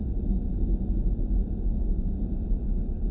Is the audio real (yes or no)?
yes